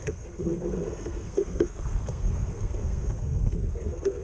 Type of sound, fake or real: fake